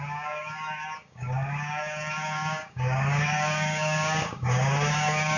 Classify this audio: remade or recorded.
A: remade